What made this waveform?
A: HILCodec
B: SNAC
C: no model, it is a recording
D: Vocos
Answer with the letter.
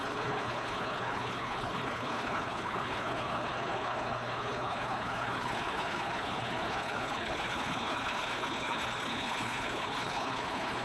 A